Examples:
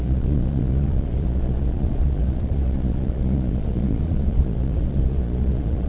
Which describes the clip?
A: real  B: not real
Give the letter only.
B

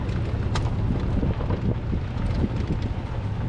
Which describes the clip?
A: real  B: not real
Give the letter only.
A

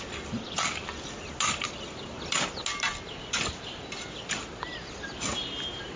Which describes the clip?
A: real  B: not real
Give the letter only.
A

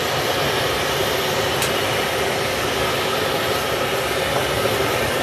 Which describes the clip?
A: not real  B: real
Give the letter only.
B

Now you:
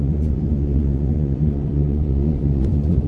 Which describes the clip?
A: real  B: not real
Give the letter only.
B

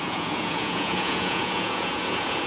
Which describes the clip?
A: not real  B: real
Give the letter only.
A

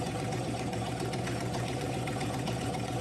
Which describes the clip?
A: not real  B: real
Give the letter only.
A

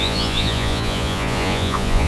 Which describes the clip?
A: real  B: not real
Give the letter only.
B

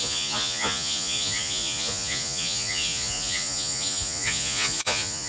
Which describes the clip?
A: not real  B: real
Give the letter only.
A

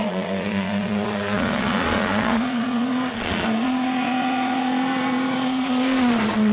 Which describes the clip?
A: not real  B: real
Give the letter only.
A